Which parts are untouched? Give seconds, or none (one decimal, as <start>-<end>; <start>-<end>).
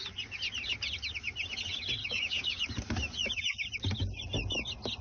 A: 0.0-2.0; 2.6-5.0